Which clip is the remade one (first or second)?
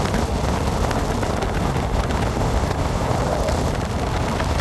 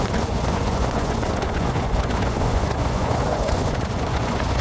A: second